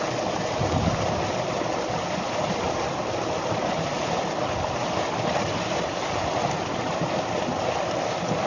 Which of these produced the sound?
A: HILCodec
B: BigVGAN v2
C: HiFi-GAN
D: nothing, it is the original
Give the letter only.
D